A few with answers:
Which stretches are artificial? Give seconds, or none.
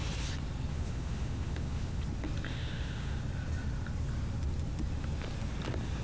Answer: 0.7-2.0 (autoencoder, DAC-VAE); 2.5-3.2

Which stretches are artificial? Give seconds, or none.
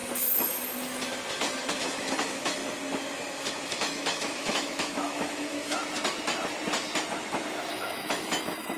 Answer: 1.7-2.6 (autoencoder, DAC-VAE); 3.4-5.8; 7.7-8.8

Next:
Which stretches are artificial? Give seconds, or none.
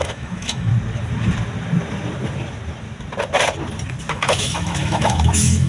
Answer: 0.0-0.7 (autoencoder, DAC-VAE); 4.1-5.7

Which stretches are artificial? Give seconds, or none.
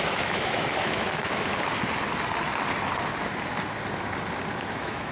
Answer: 0.0-1.5 (autoencoder, DAC-VAE); 4.6-5.1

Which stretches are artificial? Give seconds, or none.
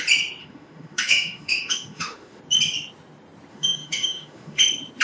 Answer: 0.4-2.4 (autoencoder, DAC-VAE); 3.5-4.6